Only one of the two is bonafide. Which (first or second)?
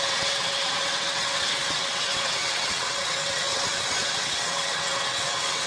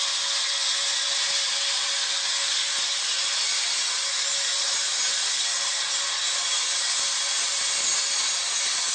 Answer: second